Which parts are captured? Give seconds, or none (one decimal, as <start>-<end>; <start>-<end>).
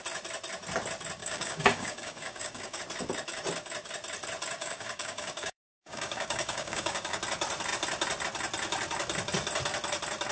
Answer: 0.0-1.2; 2.8-4.6; 7.2-10.3